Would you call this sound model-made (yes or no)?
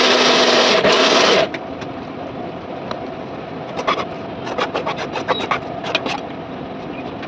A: no